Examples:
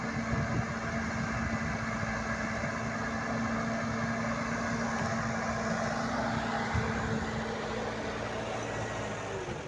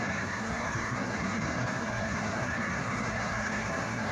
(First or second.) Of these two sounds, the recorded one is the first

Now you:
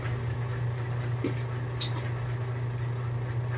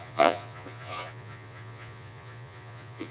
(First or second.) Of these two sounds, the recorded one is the first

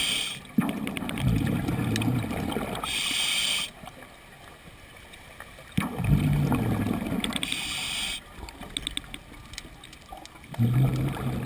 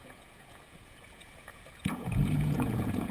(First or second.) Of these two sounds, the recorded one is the first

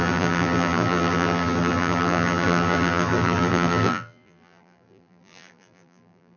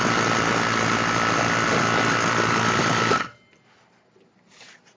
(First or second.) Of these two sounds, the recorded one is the second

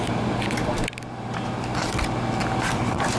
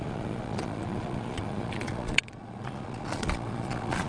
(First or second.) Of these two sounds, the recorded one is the first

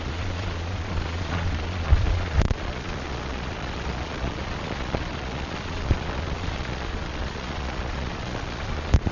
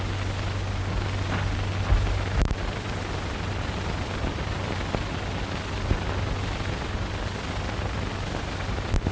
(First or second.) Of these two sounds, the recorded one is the second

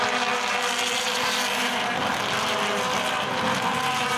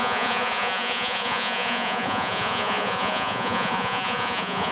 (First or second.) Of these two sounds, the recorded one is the first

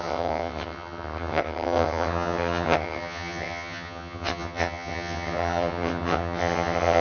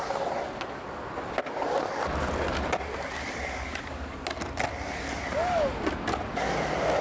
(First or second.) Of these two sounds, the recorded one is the second